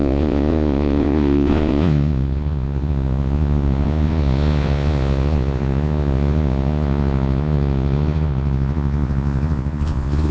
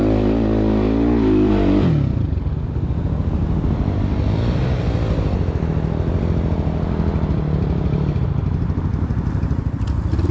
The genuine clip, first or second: second